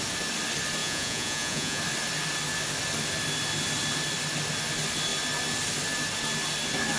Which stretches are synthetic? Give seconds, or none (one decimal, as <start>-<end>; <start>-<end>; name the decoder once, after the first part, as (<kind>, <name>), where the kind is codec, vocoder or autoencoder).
0.8-1.8 (vocoder, Vocos)